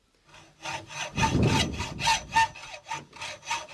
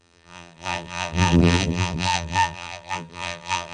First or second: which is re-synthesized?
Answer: second